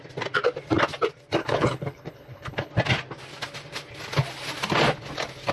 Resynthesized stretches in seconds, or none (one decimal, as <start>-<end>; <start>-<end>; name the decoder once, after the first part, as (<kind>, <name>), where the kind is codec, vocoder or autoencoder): 1.4-2.7 (codec, HILCodec)